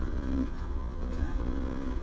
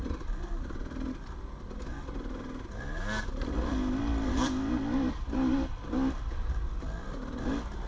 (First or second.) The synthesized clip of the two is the first